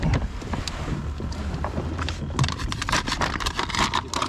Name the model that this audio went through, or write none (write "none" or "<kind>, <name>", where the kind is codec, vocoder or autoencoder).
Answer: none